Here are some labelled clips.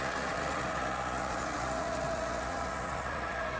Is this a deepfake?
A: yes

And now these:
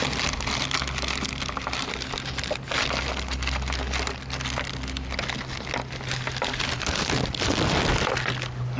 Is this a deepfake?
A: no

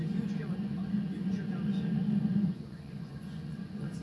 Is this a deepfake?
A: yes